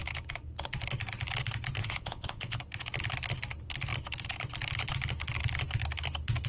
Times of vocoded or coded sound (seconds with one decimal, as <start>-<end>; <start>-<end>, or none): 1.8-2.6